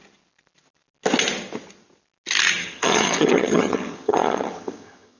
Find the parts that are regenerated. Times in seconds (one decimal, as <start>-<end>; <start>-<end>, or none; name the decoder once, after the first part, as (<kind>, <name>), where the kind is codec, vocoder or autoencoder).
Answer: 2.6-5.2 (vocoder, HiFi-GAN)